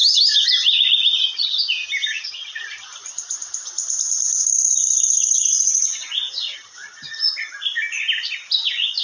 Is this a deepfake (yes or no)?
no